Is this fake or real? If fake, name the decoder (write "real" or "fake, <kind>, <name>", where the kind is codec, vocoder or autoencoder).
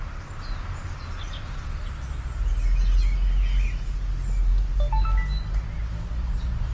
real